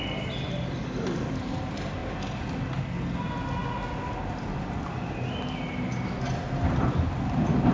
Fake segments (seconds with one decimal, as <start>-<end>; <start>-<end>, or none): none